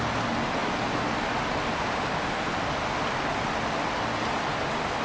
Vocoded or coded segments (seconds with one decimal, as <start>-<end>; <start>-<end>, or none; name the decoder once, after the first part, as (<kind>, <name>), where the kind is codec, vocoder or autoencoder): none